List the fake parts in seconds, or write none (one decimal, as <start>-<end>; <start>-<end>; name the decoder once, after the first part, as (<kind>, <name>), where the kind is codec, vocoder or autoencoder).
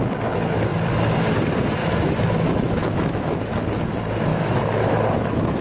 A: 1.8-3.6 (autoencoder, DAC-VAE); 4.3-5.6